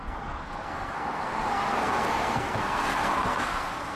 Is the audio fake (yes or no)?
yes